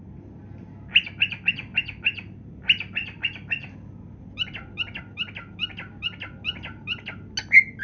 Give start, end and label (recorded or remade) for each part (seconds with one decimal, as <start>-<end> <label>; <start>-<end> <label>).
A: 0.0-7.8 recorded